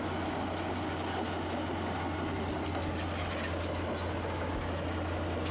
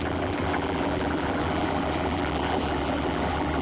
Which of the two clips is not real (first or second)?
second